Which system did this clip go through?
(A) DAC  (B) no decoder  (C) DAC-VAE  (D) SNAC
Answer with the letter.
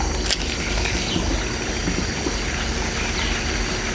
B